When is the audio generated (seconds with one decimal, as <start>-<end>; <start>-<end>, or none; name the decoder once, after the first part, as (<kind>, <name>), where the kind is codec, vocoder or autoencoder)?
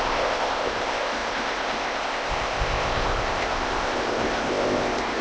0.0-5.2 (codec, ZipCodec)